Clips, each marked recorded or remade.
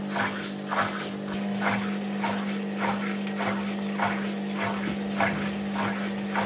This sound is recorded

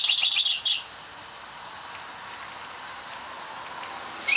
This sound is recorded